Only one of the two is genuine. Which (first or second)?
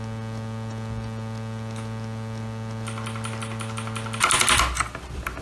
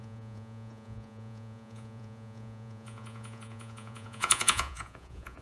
first